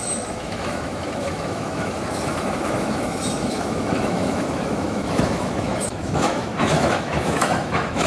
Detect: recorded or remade remade